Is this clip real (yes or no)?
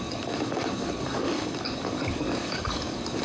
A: no